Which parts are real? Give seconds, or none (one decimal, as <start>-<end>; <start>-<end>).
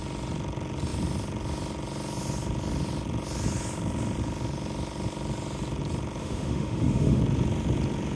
0.0-6.2; 7.2-8.2